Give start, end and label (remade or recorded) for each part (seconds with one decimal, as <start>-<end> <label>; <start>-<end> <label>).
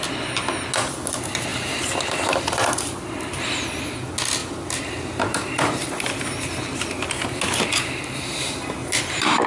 0.0-1.5 recorded; 1.5-3.8 remade; 3.8-4.4 recorded; 4.4-6.1 remade; 6.1-8.8 recorded; 8.8-9.5 remade